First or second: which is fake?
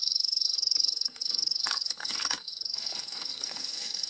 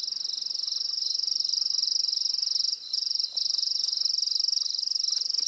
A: first